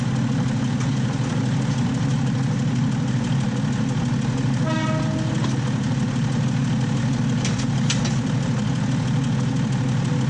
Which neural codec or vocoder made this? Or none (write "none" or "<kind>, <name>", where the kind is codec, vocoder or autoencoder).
none